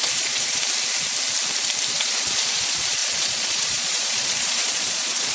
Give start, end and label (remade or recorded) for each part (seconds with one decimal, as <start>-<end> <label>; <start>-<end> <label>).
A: 0.0-0.6 remade; 0.6-1.9 recorded; 1.9-5.3 remade